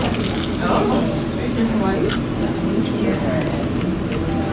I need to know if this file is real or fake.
real